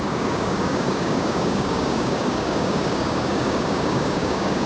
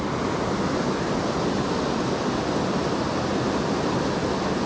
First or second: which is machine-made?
first